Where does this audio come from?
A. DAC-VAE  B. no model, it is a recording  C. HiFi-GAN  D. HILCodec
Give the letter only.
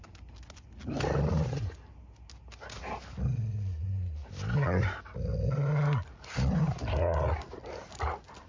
B